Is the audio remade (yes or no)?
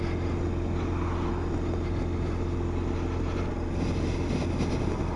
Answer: no